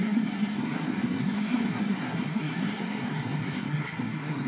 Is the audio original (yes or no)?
no